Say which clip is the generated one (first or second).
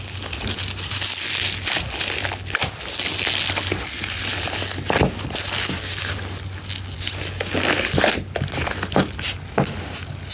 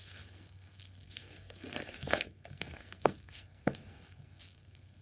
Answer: second